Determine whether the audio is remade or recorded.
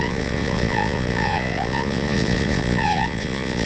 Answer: remade